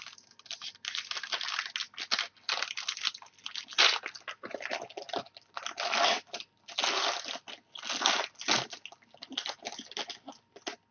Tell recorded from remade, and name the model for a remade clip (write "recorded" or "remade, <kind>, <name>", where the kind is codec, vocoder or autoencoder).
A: recorded